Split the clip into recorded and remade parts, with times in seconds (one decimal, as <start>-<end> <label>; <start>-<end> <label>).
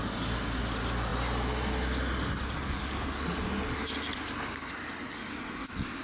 0.0-6.0 recorded